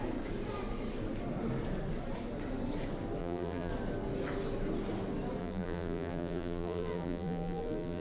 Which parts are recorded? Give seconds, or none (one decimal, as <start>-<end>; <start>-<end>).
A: 0.0-3.2; 3.7-5.4